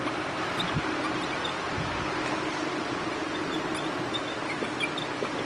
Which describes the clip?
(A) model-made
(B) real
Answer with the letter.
B